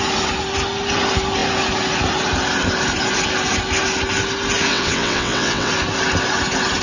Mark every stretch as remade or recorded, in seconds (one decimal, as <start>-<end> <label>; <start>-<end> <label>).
0.0-4.7 recorded; 4.7-5.7 remade; 5.7-6.8 recorded